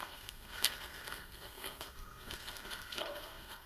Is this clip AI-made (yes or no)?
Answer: yes